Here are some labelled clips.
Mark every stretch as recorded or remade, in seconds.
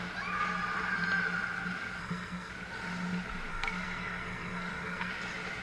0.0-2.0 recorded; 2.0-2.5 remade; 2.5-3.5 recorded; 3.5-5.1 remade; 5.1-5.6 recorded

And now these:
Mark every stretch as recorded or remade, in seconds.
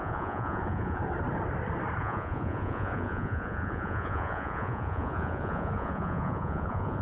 0.0-1.0 remade; 1.0-2.0 recorded; 2.0-7.0 remade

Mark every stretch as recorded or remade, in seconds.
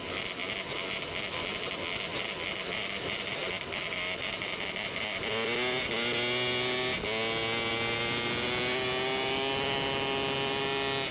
0.0-11.1 recorded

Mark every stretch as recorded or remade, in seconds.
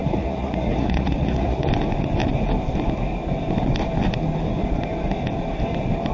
0.0-1.7 remade; 1.7-6.1 recorded